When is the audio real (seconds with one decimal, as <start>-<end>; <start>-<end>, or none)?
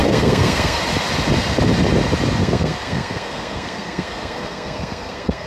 0.8-2.4